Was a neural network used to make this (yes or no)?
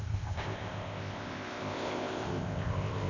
yes